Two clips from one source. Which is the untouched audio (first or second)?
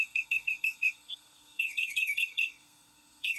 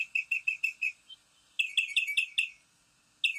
second